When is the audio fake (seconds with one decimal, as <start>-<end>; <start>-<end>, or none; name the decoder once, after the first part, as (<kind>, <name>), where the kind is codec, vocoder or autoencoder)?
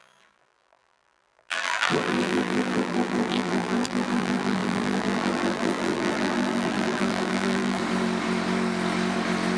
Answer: 0.0-7.8 (vocoder, BigVGAN v2)